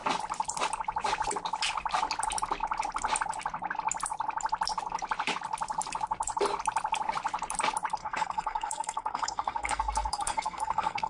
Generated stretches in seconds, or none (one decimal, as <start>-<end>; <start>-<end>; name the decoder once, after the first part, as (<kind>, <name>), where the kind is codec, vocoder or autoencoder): 8.0-11.1 (codec, SNAC)

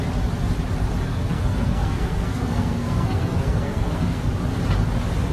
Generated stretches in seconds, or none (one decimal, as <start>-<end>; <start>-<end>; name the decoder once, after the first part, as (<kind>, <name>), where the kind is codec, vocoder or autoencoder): 1.1-4.3 (codec, SNAC)

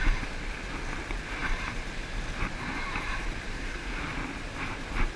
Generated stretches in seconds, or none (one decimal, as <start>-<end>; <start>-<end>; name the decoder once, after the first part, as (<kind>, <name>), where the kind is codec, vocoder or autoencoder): 3.5-4.0 (codec, SNAC)

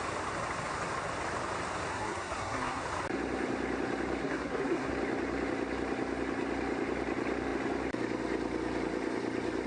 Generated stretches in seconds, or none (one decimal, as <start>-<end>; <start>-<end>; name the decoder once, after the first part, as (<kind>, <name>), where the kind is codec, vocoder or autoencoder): 1.9-2.8 (codec, SNAC); 4.2-4.9

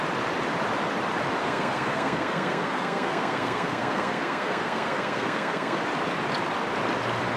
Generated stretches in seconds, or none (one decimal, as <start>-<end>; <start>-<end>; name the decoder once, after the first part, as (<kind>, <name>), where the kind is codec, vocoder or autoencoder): 1.4-5.8 (codec, SNAC)